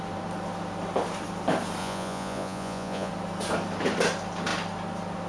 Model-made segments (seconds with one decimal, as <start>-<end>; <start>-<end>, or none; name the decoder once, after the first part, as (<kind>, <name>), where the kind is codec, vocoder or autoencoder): 1.8-3.1 (vocoder, Vocos)